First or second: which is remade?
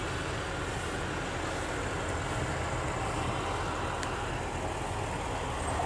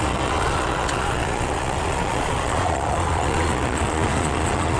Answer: second